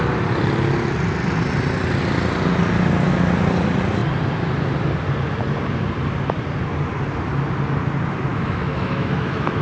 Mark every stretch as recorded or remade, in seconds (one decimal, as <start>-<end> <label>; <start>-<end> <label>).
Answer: 0.0-8.3 recorded; 8.3-9.6 remade